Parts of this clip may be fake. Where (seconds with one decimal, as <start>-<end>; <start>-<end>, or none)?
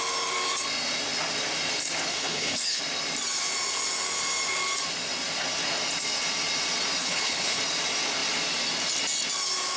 2.1-2.8; 7.0-7.6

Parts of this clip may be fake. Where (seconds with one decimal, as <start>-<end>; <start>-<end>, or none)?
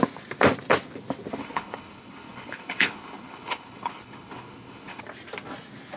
1.4-5.0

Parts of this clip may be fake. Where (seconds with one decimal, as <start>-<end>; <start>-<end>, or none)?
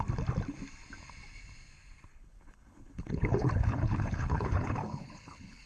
2.1-5.7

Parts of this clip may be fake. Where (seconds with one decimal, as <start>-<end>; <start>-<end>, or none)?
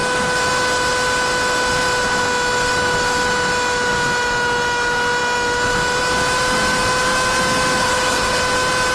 7.8-8.4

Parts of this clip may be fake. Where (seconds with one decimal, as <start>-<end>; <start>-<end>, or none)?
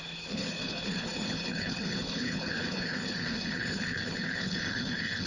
0.0-5.3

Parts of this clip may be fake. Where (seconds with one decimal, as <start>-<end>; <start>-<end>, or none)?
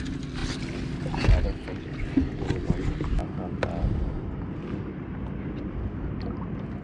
none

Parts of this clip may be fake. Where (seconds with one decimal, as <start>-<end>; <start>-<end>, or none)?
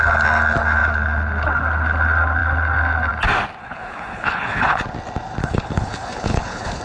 3.6-4.8; 5.4-6.8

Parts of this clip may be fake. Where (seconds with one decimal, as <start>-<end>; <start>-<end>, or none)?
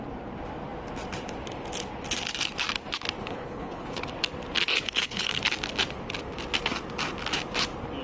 3.2-4.0; 4.7-5.4